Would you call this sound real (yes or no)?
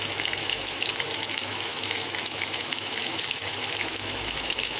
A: no